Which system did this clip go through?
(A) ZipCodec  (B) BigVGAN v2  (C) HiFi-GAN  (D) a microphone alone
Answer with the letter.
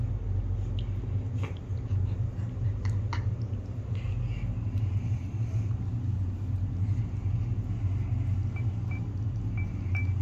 D